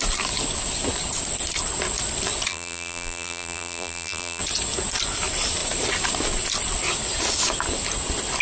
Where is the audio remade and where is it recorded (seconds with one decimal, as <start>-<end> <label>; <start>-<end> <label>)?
0.0-2.5 recorded; 2.5-4.4 remade; 4.4-8.4 recorded